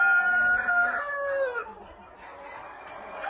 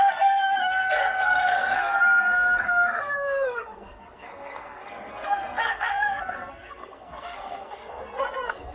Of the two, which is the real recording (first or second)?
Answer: first